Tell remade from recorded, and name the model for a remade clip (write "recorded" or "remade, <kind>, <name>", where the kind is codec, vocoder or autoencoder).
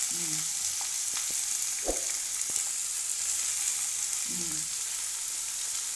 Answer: recorded